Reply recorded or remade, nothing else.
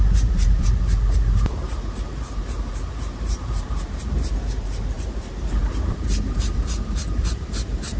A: remade